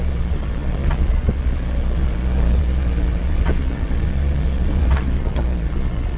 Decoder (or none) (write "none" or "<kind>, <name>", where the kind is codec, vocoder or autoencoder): vocoder, Vocos